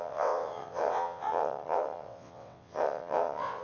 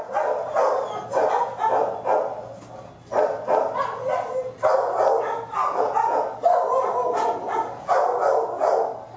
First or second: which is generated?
first